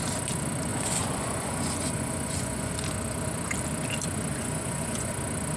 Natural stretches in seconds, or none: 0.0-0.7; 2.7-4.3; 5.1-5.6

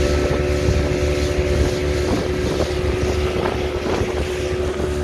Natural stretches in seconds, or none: 0.0-5.0

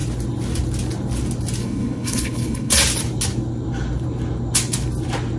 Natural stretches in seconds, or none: 0.0-1.6; 2.7-5.4

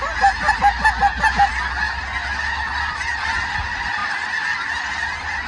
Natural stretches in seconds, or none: 0.0-5.5

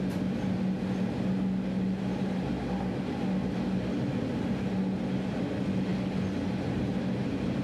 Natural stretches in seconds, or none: 0.0-7.6

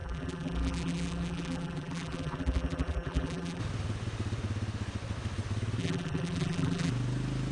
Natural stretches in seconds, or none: 3.6-5.8; 6.9-7.5

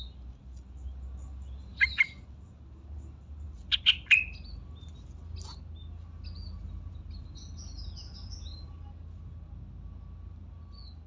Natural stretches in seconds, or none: 0.0-11.1